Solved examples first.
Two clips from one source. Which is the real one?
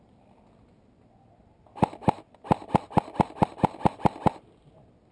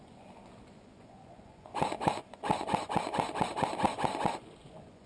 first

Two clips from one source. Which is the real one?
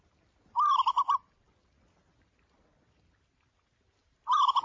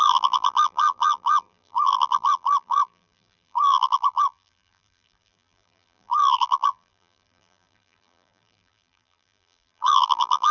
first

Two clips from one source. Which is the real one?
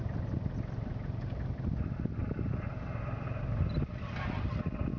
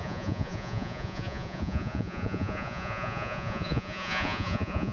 first